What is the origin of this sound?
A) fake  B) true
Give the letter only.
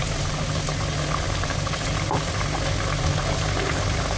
B